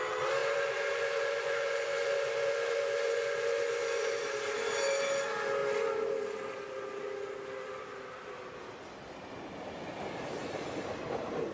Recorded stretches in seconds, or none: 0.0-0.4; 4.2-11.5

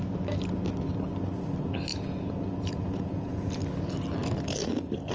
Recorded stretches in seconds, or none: 0.0-1.9; 3.5-5.1